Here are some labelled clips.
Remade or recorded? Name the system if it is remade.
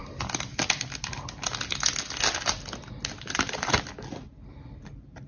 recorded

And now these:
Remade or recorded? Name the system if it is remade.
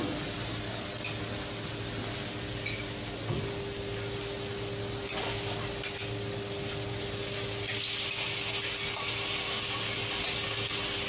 recorded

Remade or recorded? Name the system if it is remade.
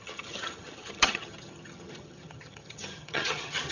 remade, vocoder, HiFi-GAN